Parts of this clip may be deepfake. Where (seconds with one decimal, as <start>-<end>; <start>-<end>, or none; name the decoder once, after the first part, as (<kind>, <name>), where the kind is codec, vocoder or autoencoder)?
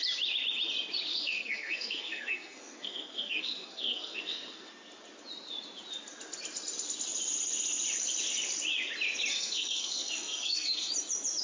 1.1-4.7 (codec, SNAC); 9.3-10.9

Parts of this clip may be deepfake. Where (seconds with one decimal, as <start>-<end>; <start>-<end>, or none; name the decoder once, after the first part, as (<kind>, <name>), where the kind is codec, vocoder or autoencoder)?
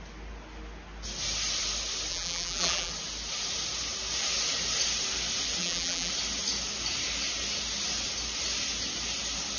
2.1-2.9 (vocoder, BigVGAN v2); 5.6-6.1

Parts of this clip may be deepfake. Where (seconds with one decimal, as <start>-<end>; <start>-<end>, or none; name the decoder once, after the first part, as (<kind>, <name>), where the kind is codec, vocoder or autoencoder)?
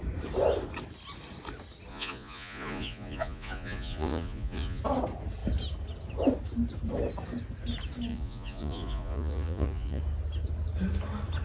1.9-4.8 (vocoder, Vocos); 8.1-10.0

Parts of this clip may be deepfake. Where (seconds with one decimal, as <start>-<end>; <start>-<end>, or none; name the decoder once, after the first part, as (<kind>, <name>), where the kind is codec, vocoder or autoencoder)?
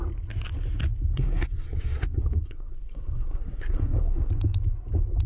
1.1-4.3 (codec, SNAC)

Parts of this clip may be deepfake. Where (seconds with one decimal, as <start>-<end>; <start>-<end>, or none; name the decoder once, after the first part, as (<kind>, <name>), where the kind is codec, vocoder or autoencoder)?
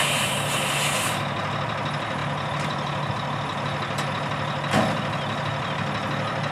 none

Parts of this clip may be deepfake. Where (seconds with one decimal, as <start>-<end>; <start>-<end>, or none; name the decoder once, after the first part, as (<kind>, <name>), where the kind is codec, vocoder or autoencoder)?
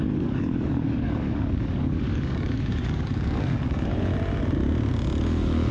0.0-4.1 (codec, DAC); 5.2-5.7